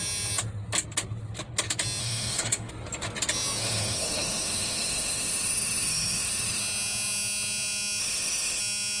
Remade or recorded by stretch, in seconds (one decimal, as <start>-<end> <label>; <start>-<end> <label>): 0.0-2.0 recorded; 2.0-2.7 remade; 2.7-3.6 recorded; 3.6-6.6 remade; 6.6-8.0 recorded; 8.0-8.6 remade; 8.6-9.0 recorded